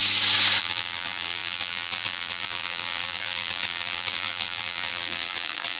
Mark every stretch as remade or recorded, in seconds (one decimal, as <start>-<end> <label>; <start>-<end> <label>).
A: 0.0-0.6 recorded; 0.6-5.8 remade